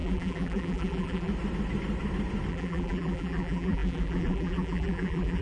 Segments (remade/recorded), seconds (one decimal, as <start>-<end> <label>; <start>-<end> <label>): 0.0-1.3 remade; 1.3-2.5 recorded; 2.5-5.4 remade